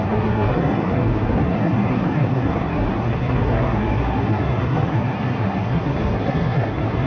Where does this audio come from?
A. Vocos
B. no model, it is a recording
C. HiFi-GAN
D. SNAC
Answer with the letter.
D